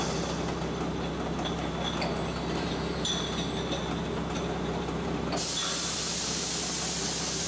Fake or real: real